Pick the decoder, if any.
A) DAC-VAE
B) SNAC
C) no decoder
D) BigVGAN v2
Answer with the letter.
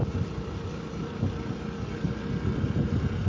C